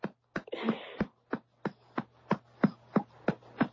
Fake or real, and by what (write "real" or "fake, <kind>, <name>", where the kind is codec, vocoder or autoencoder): real